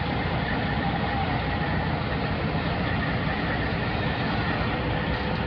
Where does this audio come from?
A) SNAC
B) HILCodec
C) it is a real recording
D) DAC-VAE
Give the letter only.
C